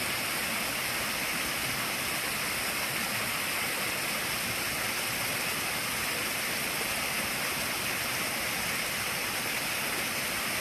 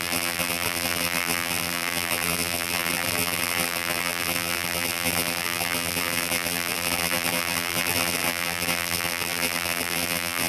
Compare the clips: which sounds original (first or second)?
first